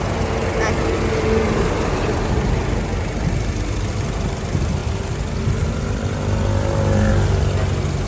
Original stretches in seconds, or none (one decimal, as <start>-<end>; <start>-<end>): 0.0-8.1